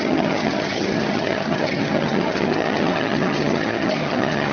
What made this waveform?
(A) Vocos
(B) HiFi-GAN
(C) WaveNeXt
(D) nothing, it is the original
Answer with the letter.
B